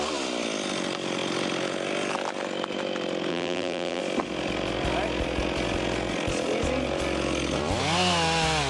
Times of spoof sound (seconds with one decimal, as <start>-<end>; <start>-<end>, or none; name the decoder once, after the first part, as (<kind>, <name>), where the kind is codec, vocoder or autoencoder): 3.3-4.0 (vocoder, BigVGAN v2)